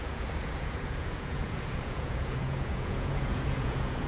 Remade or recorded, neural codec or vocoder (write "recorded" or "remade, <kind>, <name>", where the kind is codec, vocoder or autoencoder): remade, vocoder, Vocos